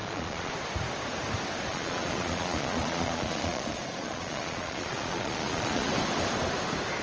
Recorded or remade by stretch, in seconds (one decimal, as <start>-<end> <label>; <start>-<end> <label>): 0.0-0.5 remade; 0.5-1.7 recorded; 1.7-5.9 remade; 5.9-7.0 recorded

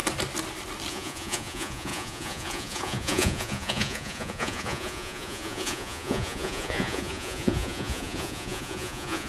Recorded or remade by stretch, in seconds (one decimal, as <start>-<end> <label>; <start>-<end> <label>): 0.0-0.9 recorded; 0.9-9.3 remade

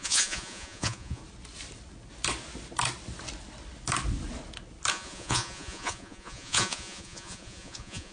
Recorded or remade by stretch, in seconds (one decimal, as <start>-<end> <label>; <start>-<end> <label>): 0.0-1.2 remade; 1.2-4.9 recorded; 4.9-8.1 remade

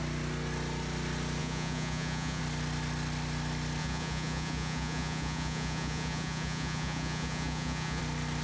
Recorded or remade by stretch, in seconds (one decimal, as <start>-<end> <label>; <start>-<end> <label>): 0.0-1.4 recorded; 1.4-2.4 remade; 2.4-3.8 recorded; 3.8-8.0 remade; 8.0-8.4 recorded

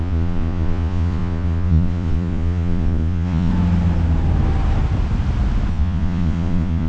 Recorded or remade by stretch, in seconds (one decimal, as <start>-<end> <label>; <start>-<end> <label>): 0.0-3.5 remade; 3.5-5.7 recorded; 5.7-6.9 remade